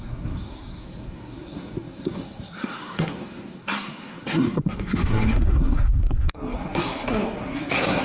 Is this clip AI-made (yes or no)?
yes